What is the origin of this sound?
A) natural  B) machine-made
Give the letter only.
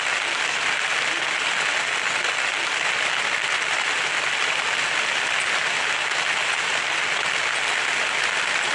A